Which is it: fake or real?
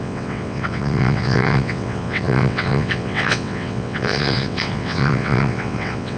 fake